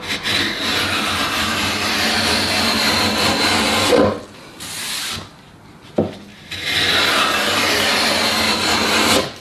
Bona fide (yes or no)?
yes